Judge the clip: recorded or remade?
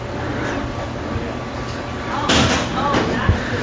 recorded